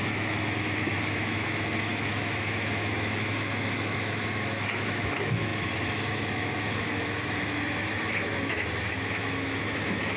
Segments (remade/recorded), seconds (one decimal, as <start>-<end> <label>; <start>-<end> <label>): 0.0-10.2 remade